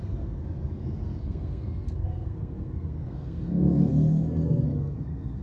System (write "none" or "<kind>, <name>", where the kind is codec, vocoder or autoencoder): codec, SNAC